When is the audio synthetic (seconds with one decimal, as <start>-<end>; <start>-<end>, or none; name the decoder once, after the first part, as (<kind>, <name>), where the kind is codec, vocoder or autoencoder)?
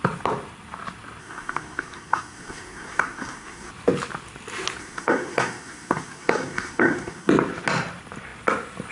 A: 1.2-3.7 (codec, SNAC); 4.8-7.3